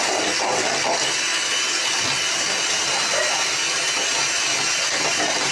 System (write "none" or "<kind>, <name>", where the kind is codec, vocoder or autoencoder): none